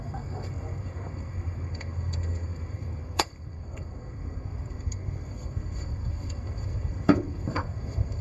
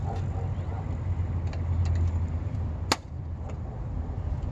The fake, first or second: first